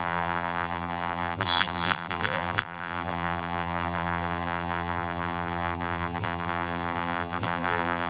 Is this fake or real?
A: fake